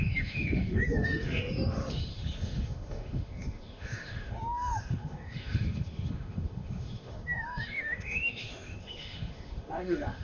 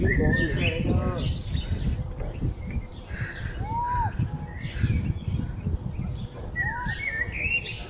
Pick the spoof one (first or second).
first